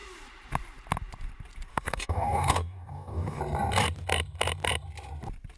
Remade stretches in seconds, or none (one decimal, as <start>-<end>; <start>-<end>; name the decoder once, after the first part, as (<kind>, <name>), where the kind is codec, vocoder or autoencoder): 1.7-3.4 (codec, DAC)